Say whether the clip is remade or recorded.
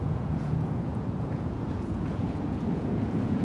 remade